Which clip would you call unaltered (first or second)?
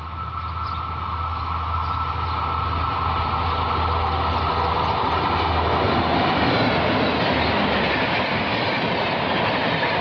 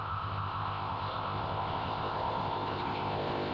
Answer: first